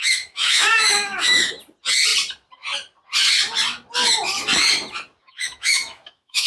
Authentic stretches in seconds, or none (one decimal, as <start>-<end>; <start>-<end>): 1.5-5.2